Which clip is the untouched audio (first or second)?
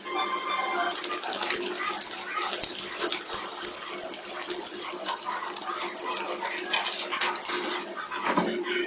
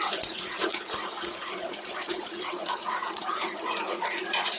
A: first